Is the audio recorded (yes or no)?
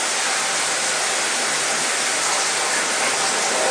yes